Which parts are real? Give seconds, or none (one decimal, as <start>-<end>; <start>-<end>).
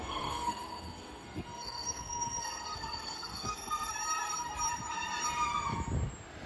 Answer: 3.9-6.5